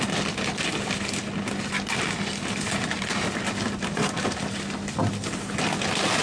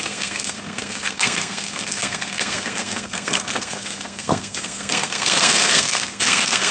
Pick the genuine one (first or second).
first